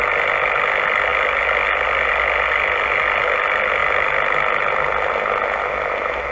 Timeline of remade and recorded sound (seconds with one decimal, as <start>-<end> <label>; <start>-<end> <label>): 0.0-6.3 recorded